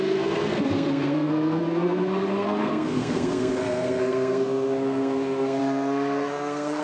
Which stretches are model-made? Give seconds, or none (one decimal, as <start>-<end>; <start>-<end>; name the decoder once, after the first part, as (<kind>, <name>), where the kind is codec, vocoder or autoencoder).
0.0-6.8 (codec, SNAC)